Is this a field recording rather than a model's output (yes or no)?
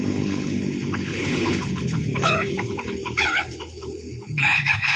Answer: no